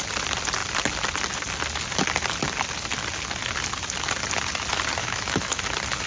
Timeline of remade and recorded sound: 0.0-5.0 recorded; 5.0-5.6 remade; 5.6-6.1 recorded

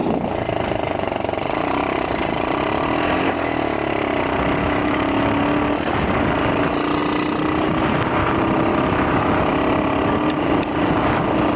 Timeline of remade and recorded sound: 0.0-4.6 recorded; 4.6-5.4 remade; 5.4-8.7 recorded; 8.7-9.5 remade; 9.5-11.6 recorded